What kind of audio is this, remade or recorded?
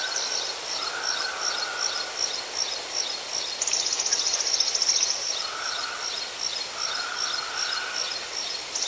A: recorded